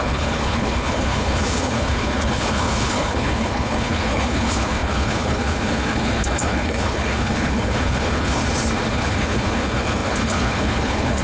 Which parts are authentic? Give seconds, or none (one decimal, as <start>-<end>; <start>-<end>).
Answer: 8.4-8.9